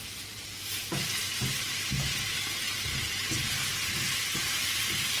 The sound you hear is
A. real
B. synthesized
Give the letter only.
B